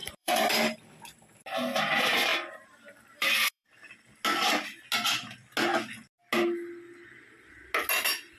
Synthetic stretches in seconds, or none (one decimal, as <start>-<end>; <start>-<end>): 0.0-0.5; 2.3-3.9